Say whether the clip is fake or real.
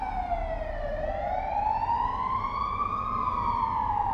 real